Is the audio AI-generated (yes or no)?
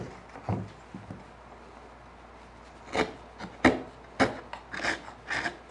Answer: no